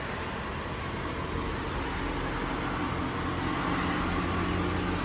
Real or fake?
real